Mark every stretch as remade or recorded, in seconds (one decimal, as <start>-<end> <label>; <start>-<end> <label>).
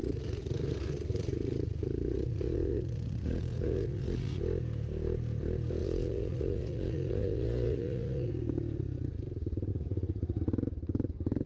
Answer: 0.0-4.4 remade; 4.4-5.8 recorded; 5.8-8.3 remade; 8.3-9.7 recorded; 9.7-10.4 remade; 10.4-11.5 recorded